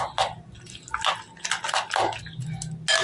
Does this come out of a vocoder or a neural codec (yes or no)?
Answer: no